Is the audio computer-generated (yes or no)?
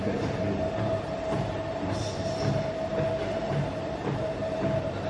yes